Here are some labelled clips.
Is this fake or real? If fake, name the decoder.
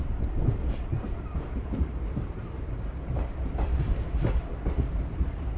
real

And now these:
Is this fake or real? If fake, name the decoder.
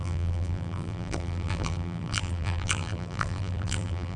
fake, vocoder, BigVGAN v2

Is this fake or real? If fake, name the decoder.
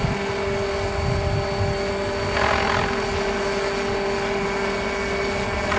real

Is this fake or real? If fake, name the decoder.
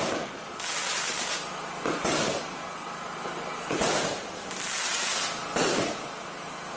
real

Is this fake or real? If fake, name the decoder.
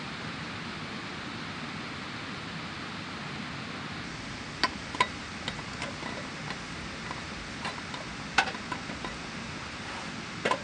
real